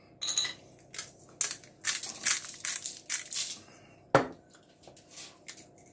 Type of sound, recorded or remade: recorded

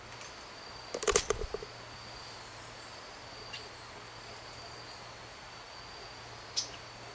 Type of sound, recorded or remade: recorded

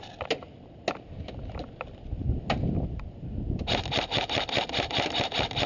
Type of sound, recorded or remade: recorded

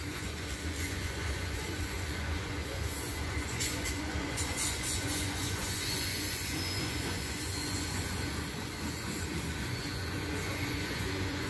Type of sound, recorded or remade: remade